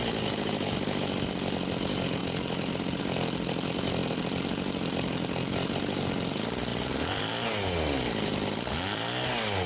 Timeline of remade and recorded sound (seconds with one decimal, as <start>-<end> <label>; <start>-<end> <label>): 0.0-2.2 recorded; 2.2-3.0 remade; 3.0-6.7 recorded; 6.7-7.2 remade; 7.2-9.7 recorded